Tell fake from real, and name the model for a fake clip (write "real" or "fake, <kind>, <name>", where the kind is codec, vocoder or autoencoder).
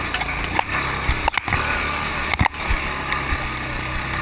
real